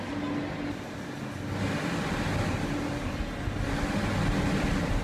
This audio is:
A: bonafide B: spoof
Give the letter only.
A